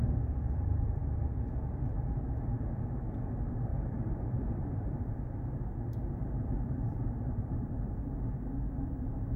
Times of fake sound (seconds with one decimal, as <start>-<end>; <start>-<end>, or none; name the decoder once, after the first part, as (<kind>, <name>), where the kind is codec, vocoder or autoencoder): 3.7-5.1 (vocoder, BigVGAN v2); 6.2-7.7